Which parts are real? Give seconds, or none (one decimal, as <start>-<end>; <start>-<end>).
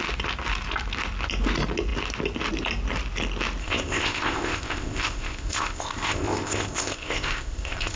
0.0-3.6